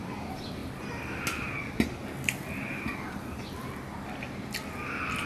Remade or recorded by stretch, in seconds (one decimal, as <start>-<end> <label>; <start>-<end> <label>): 0.0-5.3 recorded